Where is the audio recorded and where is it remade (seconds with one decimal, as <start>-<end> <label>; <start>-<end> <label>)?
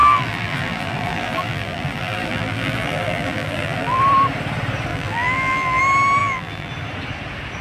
0.0-4.0 remade; 4.0-4.9 recorded; 4.9-5.8 remade; 5.8-6.2 recorded; 6.2-6.7 remade; 6.7-7.6 recorded